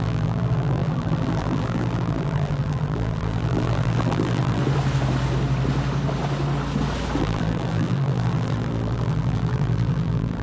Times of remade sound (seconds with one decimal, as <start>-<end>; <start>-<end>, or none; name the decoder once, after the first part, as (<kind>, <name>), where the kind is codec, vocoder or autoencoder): 0.0-4.6 (vocoder, BigVGAN v2); 7.2-10.4